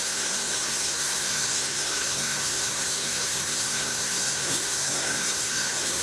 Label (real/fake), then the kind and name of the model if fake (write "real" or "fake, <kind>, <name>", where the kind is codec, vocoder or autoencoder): fake, codec, SNAC